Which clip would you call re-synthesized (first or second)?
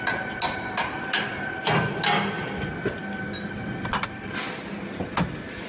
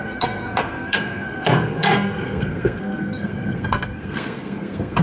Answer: second